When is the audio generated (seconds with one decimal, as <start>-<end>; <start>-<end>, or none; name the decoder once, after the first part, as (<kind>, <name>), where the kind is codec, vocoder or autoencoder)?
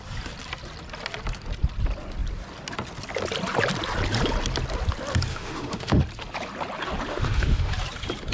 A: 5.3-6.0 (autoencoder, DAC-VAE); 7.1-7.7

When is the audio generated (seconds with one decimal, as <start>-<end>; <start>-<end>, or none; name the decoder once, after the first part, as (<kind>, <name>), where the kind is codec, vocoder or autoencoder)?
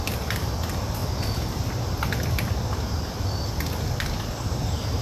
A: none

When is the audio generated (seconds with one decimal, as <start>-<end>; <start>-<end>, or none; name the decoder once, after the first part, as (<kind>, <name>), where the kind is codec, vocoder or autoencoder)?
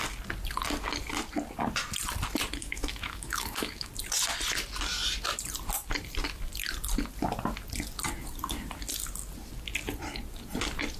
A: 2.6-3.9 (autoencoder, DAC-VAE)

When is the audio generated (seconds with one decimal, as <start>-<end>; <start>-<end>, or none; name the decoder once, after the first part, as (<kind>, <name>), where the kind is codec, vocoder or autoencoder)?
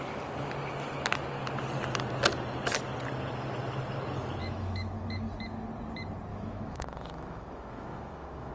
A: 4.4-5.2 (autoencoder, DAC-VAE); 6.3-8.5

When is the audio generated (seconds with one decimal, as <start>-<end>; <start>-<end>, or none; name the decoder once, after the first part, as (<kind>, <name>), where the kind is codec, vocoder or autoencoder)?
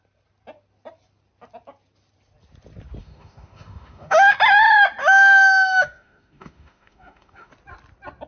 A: 3.0-4.4 (autoencoder, DAC-VAE); 5.0-7.5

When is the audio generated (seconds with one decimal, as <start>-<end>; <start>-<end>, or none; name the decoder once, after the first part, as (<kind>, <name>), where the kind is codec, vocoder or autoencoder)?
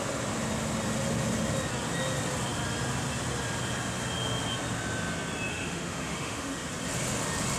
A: 5.5-6.7 (autoencoder, DAC-VAE)